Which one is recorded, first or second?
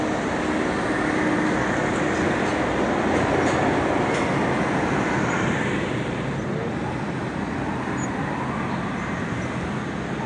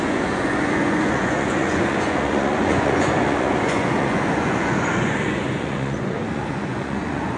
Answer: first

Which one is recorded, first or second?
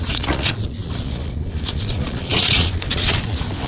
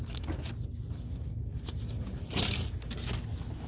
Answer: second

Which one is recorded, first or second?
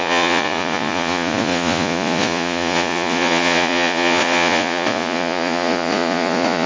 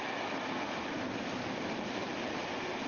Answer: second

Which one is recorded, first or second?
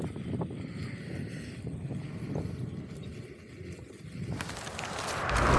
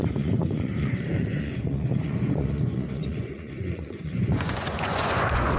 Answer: first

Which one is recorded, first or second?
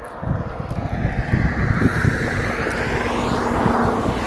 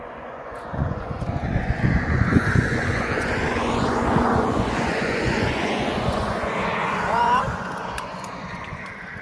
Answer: first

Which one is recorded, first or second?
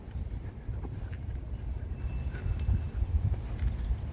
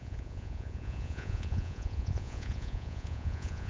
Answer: first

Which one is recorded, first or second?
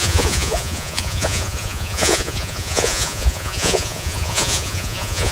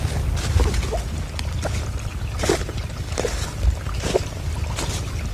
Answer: second